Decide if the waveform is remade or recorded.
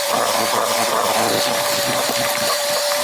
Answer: remade